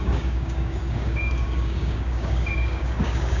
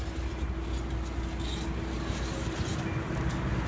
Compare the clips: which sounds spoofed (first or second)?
first